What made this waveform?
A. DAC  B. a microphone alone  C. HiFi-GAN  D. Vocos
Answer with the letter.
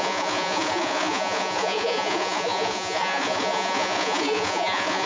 D